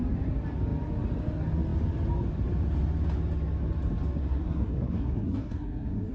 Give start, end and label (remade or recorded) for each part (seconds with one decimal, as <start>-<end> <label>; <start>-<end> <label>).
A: 0.0-4.2 recorded; 4.2-6.1 remade